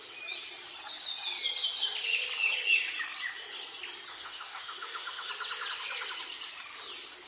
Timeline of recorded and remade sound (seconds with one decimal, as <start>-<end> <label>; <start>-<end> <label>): 0.0-4.1 recorded; 4.1-5.3 remade; 5.3-7.3 recorded